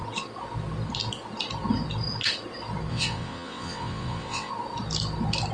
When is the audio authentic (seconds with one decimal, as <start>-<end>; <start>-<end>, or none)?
0.0-2.9; 4.5-5.5